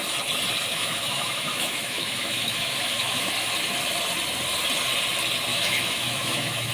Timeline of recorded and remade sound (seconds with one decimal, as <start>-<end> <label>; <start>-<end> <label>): 0.0-0.7 recorded; 0.7-3.3 remade; 3.3-5.5 recorded; 5.5-6.7 remade